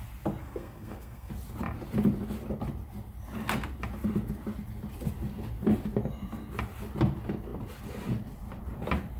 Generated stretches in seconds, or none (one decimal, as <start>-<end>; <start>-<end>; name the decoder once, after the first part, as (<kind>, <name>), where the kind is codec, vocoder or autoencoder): 0.4-1.3 (codec, SNAC)